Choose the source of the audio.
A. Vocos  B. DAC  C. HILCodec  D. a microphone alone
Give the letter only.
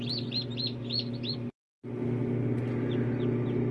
D